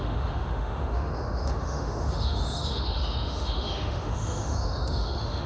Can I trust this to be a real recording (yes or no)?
no